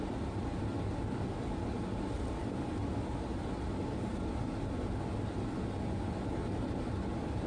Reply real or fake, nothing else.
real